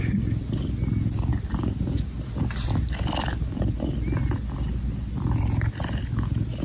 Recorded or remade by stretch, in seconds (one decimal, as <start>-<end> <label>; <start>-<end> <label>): 0.0-6.6 recorded